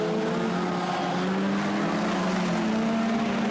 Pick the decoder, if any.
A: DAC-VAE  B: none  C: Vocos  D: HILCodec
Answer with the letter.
B